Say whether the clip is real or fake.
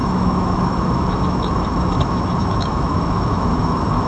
fake